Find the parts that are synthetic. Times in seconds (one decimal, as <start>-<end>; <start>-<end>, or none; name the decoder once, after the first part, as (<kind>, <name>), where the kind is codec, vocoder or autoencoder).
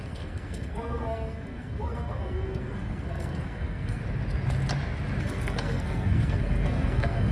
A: 0.0-4.0 (codec, SNAC); 5.2-7.3